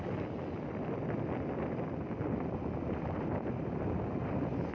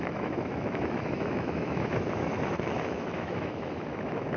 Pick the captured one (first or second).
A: first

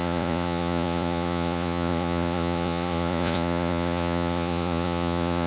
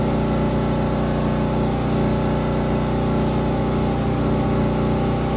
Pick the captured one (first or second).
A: second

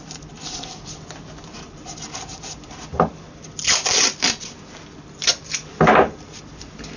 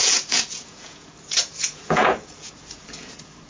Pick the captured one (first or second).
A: first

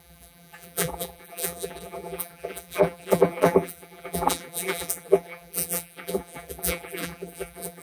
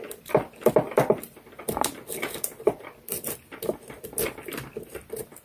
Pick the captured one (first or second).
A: second